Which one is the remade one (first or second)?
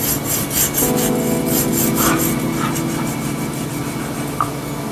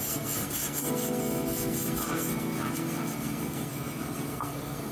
second